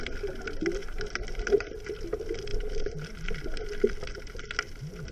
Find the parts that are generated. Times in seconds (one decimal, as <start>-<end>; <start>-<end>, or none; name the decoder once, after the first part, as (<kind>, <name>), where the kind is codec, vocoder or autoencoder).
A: 0.8-1.7 (vocoder, BigVGAN v2)

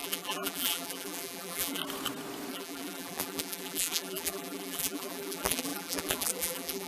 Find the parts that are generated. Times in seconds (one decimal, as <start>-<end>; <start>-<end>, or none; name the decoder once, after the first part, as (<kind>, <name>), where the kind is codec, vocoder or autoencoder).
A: 0.0-1.8 (vocoder, BigVGAN v2); 2.5-6.9

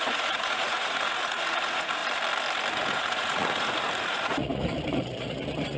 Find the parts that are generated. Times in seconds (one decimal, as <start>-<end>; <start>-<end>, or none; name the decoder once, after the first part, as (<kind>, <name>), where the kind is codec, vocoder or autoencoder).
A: 0.0-2.0 (vocoder, Vocos); 2.7-5.8

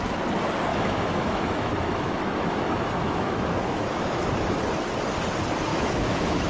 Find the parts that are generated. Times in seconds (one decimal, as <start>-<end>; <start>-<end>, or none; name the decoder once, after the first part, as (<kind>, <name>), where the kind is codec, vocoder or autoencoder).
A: 0.7-4.3 (autoencoder, DAC-VAE); 5.7-6.5